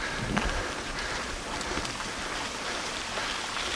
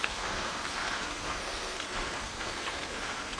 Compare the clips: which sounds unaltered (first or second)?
first